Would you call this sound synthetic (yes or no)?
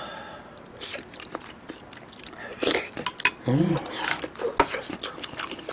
no